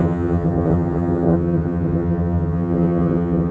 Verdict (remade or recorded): remade